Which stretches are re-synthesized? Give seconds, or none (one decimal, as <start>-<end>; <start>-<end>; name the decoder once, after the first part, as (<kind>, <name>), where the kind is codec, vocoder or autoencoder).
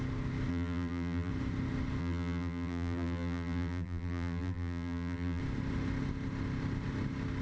0.5-1.3 (vocoder, BigVGAN v2); 2.0-5.4